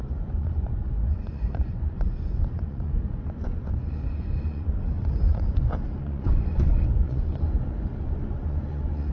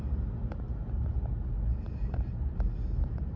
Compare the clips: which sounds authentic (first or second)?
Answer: second